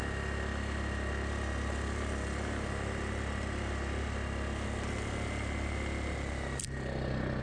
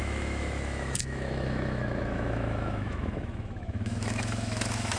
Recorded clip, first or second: first